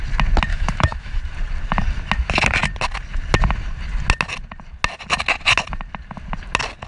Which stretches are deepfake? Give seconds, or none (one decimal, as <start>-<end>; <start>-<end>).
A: 0.5-1.2